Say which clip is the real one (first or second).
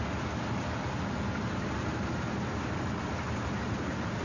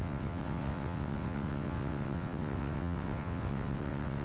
first